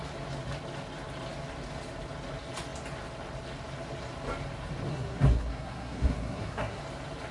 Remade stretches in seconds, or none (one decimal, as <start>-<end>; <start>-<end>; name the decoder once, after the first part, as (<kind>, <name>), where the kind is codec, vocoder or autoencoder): 4.9-6.8 (codec, SNAC)